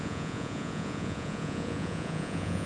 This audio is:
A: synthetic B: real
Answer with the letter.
A